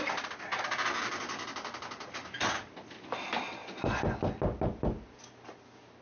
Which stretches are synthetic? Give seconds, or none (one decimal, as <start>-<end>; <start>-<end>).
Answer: none